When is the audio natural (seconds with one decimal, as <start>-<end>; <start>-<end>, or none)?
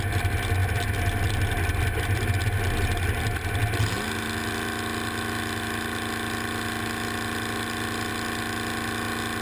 0.0-9.4